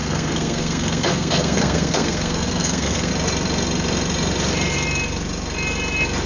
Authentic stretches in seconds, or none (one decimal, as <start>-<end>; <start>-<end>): 3.1-6.3